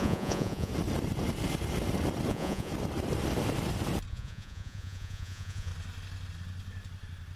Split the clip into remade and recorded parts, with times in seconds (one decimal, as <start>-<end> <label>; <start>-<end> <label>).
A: 0.0-0.7 remade; 0.7-2.3 recorded; 2.3-2.7 remade; 2.7-4.1 recorded; 4.1-5.7 remade; 5.7-7.4 recorded